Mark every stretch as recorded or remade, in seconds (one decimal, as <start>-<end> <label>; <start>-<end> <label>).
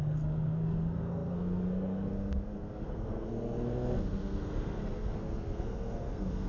0.0-6.5 remade